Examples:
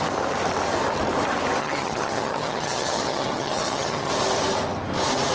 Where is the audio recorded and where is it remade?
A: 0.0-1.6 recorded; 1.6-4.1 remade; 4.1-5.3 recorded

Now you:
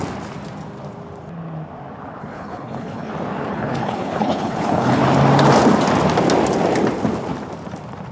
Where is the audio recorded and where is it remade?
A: 0.0-2.2 recorded; 2.2-3.1 remade; 3.1-3.5 recorded; 3.5-5.0 remade; 5.0-8.1 recorded

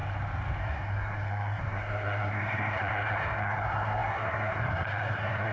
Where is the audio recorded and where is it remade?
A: 0.0-0.6 recorded; 0.6-5.5 remade

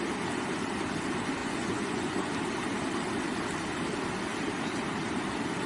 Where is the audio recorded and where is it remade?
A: 0.0-1.4 recorded; 1.4-2.3 remade; 2.3-5.7 recorded

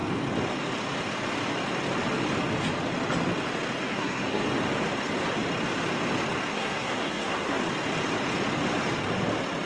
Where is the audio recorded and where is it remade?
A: 0.0-3.8 recorded; 3.8-4.4 remade; 4.4-6.5 recorded; 6.5-7.6 remade; 7.6-9.7 recorded

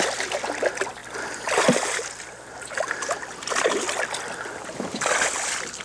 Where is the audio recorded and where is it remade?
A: 0.0-5.8 recorded

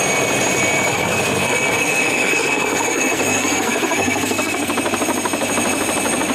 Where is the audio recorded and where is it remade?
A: 0.0-0.9 recorded; 0.9-4.7 remade; 4.7-6.3 recorded

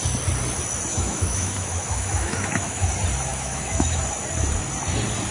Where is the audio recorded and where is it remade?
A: 0.0-0.9 recorded; 0.9-2.9 remade; 2.9-3.3 recorded; 3.3-4.0 remade; 4.0-5.3 recorded